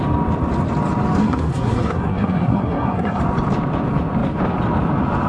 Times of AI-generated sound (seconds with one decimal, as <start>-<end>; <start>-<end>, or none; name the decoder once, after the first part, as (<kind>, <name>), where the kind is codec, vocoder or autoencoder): 1.2-3.2 (codec, SNAC)